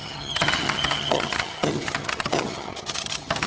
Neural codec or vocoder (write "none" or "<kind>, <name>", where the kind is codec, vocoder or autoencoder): vocoder, HiFi-GAN